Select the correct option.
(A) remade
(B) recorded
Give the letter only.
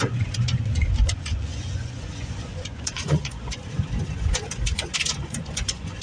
A